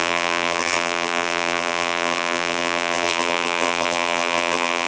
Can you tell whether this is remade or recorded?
remade